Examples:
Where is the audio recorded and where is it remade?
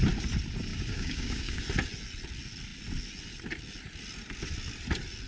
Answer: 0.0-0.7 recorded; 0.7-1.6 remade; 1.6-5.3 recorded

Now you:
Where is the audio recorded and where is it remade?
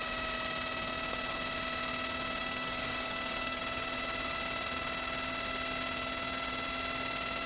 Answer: 0.0-2.4 recorded; 2.4-3.6 remade; 3.6-7.5 recorded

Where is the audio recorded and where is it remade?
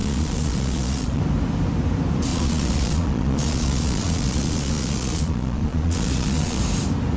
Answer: 0.0-1.2 remade; 1.2-2.3 recorded; 2.3-6.6 remade; 6.6-7.2 recorded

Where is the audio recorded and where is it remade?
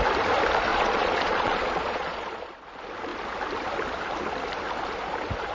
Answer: 0.0-0.7 recorded; 0.7-2.5 remade; 2.5-5.5 recorded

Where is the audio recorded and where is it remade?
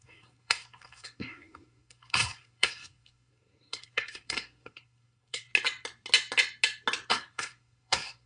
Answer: 0.0-5.5 remade; 5.5-7.1 recorded; 7.1-8.3 remade